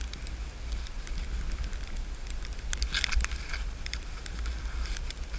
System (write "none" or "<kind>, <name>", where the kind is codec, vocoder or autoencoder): none